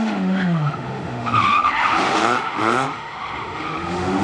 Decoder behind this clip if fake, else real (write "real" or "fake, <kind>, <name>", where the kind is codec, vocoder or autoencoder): fake, autoencoder, DAC-VAE